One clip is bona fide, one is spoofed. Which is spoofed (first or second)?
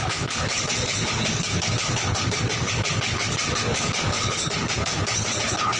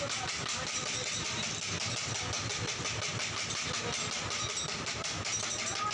first